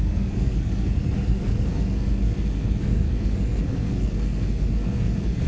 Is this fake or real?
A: fake